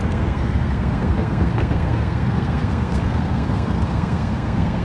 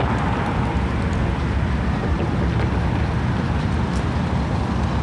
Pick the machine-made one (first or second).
first